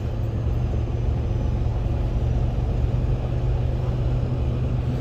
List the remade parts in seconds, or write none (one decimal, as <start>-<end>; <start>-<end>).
none